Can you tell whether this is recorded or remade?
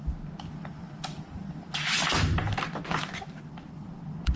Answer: recorded